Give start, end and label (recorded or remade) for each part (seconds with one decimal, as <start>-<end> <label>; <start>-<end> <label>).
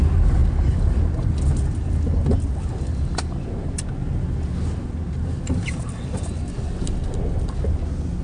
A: 0.0-8.2 recorded